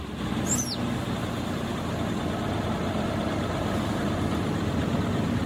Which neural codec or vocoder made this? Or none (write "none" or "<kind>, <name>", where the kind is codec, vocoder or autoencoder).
none